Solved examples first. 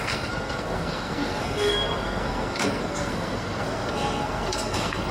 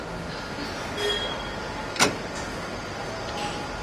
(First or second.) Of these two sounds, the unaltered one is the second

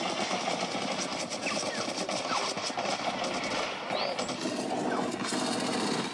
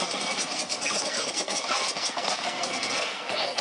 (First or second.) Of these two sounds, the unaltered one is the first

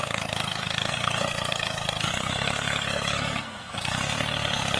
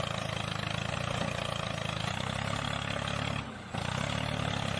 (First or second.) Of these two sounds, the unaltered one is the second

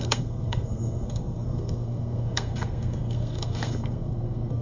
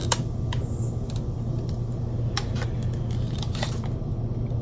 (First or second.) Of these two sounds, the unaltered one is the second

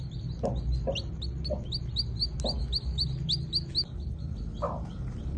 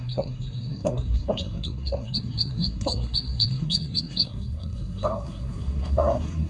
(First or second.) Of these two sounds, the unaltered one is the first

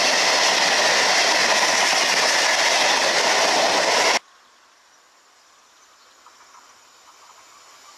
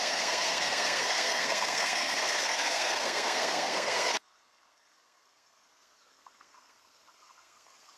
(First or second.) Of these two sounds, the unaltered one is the first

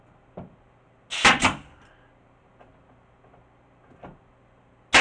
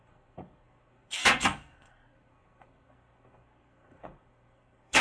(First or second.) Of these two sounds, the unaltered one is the first